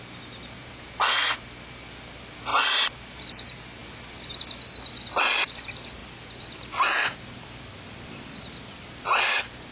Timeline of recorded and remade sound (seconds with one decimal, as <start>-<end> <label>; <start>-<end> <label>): 0.0-9.7 recorded